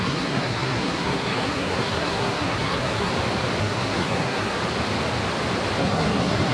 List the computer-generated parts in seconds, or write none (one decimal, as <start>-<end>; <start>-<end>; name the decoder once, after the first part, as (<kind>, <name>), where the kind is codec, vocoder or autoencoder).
0.0-3.1 (codec, SNAC); 3.6-4.6; 5.8-6.5